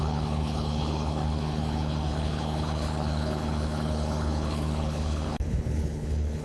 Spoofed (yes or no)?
yes